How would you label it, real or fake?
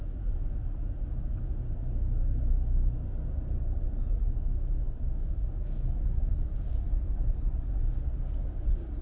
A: real